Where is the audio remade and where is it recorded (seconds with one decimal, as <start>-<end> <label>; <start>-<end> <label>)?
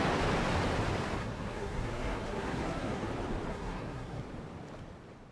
0.0-1.2 recorded; 1.2-3.1 remade; 3.1-3.5 recorded; 3.5-4.2 remade; 4.2-5.3 recorded